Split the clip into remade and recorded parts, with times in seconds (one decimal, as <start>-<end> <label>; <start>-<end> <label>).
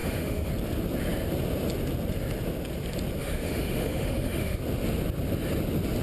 0.0-0.5 remade; 0.5-3.2 recorded; 3.2-4.6 remade; 4.6-6.0 recorded